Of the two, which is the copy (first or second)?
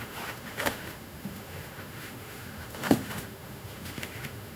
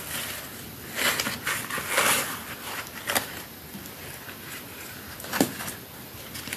first